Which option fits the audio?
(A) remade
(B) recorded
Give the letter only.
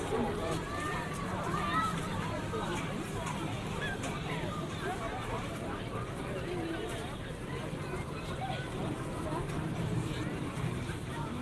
A